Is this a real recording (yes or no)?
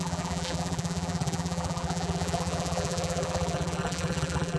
no